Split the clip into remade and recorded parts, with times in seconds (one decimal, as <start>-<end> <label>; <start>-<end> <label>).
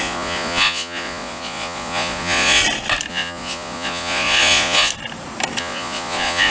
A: 0.0-2.6 remade; 2.6-3.1 recorded; 3.1-4.9 remade; 4.9-5.6 recorded; 5.6-6.5 remade